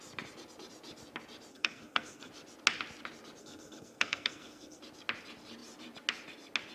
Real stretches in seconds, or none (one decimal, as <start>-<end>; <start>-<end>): 0.0-1.5; 2.3-3.4; 4.8-6.7